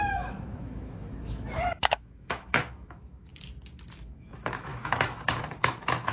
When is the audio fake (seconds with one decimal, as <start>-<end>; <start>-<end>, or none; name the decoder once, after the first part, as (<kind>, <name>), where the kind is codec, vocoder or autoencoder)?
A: 0.0-3.3 (autoencoder, DAC-VAE); 3.9-6.1